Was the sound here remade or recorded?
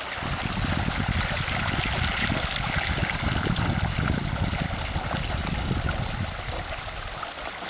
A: recorded